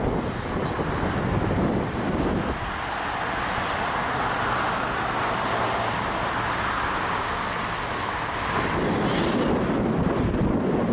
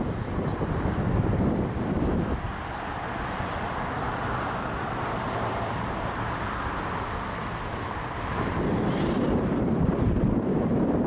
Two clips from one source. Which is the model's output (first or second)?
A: second